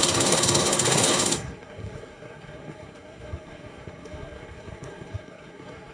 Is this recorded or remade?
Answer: remade